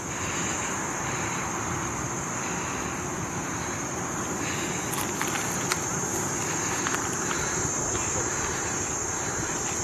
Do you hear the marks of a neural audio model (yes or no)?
yes